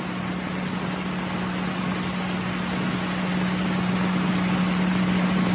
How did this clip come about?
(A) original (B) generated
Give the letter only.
A